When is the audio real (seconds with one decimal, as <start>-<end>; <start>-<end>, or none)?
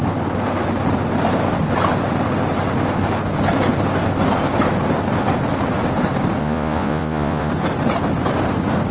0.0-6.4; 7.5-8.9